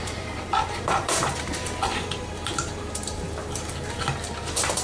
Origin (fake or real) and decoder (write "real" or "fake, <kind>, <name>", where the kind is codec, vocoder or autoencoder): fake, vocoder, BigVGAN v2